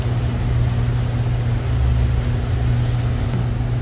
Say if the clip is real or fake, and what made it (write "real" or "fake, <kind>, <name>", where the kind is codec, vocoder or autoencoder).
real